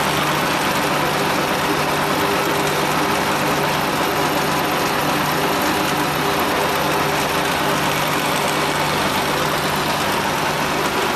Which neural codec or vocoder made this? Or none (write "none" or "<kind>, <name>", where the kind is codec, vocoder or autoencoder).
none